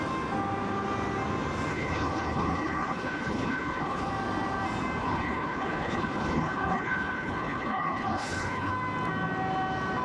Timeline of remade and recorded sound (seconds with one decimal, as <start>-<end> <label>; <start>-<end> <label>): 0.0-1.7 recorded; 1.7-4.1 remade; 4.1-5.0 recorded; 5.0-8.7 remade; 8.7-10.0 recorded